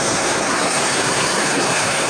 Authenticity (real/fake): fake